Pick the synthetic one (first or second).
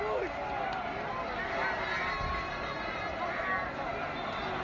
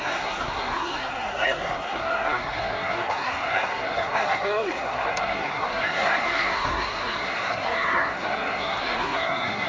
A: second